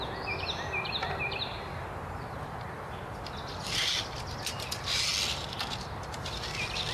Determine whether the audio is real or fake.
real